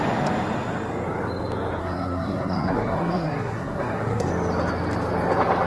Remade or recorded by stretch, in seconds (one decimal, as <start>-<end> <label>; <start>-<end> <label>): 0.0-1.8 recorded; 1.8-4.3 remade; 4.3-5.7 recorded

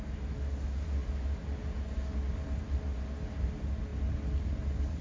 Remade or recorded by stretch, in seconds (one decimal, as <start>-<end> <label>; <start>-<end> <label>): 0.0-5.0 recorded

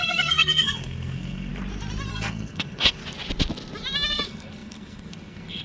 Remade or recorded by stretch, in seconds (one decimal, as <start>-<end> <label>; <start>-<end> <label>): 0.0-1.5 remade; 1.5-2.1 recorded; 2.1-3.0 remade; 3.0-4.1 recorded; 4.1-5.6 remade

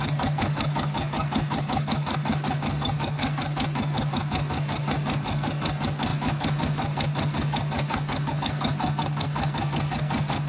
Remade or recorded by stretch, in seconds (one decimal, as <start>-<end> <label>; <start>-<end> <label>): 0.0-10.5 remade

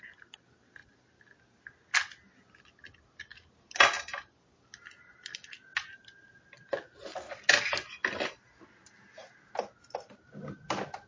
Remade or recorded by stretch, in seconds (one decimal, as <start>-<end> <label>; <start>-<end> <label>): 0.0-11.1 recorded

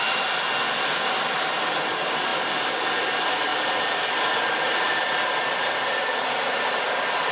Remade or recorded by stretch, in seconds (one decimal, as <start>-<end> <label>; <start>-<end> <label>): 0.0-7.3 recorded

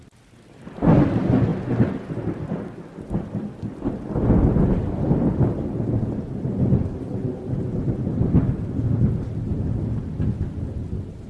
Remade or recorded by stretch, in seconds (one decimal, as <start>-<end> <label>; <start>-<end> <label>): 0.0-11.3 recorded

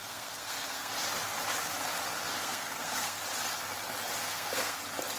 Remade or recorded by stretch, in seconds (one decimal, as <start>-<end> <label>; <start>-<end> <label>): 0.0-0.9 remade; 0.9-2.3 recorded; 2.3-3.2 remade; 3.2-4.2 recorded; 4.2-4.8 remade; 4.8-5.2 recorded